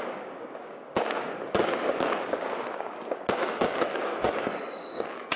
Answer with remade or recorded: remade